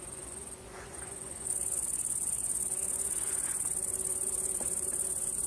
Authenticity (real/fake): fake